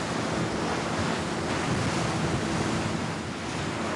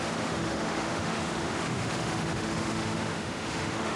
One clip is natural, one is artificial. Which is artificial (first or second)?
second